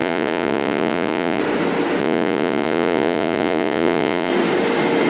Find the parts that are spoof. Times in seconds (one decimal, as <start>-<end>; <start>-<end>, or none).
0.0-1.4; 2.0-4.3